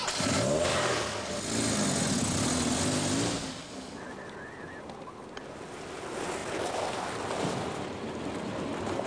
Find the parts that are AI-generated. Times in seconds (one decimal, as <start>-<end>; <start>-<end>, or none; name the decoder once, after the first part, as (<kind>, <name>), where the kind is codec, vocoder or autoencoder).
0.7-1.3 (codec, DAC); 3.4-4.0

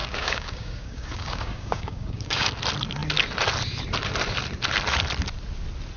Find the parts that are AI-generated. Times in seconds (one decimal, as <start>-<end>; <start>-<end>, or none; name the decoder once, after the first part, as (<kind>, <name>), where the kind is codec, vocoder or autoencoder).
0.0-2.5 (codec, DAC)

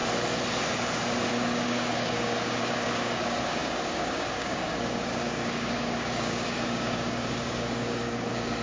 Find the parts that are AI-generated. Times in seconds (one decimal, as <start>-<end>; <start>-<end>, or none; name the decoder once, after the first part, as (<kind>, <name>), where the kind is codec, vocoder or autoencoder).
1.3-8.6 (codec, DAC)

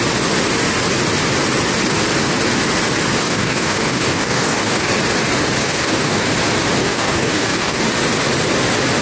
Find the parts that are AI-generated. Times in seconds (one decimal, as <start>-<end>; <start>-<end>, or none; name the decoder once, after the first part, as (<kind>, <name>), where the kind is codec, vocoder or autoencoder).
3.2-4.9 (codec, DAC); 5.6-6.2; 6.8-7.8

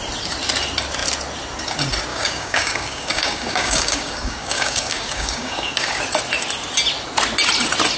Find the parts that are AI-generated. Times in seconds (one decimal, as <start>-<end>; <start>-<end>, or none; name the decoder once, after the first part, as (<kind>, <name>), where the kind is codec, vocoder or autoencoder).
2.1-6.0 (codec, DAC)

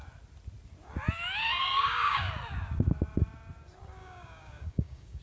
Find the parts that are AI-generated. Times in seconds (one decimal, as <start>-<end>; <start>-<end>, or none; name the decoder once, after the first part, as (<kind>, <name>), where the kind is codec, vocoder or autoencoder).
1.6-2.3 (codec, DAC); 4.0-5.2